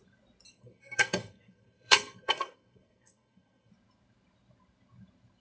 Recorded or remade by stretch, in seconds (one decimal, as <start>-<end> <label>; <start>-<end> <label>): 0.0-0.5 recorded; 0.5-3.7 remade; 3.7-5.4 recorded